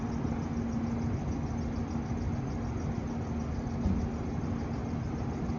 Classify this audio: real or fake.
real